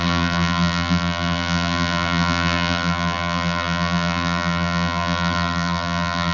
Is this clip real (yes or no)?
no